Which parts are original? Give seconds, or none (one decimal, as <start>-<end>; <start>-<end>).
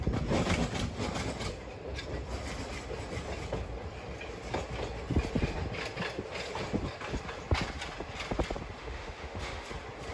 0.0-8.8; 9.7-10.1